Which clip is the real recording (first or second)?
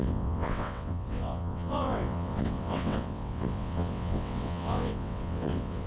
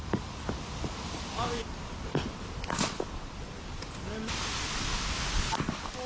second